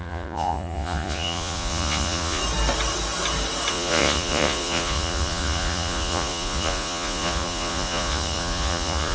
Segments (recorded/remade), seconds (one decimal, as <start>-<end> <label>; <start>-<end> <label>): 0.0-2.4 remade; 2.4-3.7 recorded; 3.7-9.1 remade

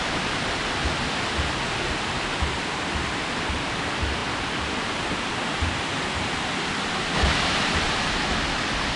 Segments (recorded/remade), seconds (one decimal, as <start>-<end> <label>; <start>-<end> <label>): 0.0-9.0 recorded

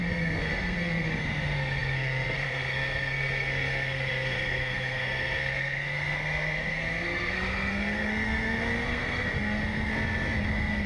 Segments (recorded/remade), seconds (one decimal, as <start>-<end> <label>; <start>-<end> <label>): 0.0-9.9 remade; 9.9-10.5 recorded; 10.5-10.9 remade

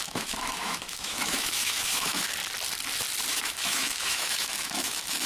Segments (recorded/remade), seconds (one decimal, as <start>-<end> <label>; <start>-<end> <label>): 0.0-2.4 remade; 2.4-3.3 recorded; 3.3-5.3 remade

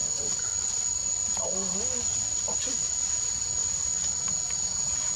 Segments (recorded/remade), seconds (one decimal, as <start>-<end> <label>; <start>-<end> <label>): 0.0-3.1 recorded; 3.1-3.6 remade; 3.6-4.2 recorded; 4.2-5.2 remade

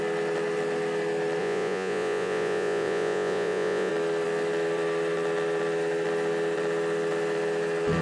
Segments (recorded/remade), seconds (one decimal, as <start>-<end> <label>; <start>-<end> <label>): 0.0-1.4 recorded; 1.4-3.9 remade; 3.9-8.0 recorded

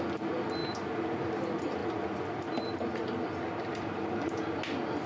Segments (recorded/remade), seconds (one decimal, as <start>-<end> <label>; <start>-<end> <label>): 0.0-0.6 recorded; 0.6-1.2 remade; 1.2-1.8 recorded; 1.8-4.3 remade; 4.3-5.1 recorded